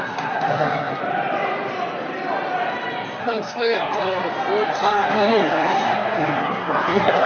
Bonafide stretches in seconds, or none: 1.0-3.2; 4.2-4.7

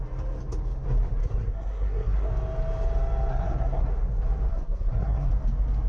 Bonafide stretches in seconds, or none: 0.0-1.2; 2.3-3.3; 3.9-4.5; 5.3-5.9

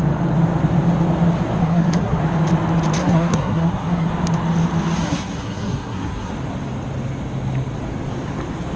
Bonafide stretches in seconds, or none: 0.0-1.6; 2.2-3.0; 4.1-5.0; 6.3-8.8

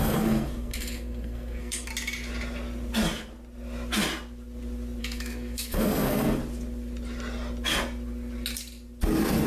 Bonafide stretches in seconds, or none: 1.9-5.0; 6.4-9.5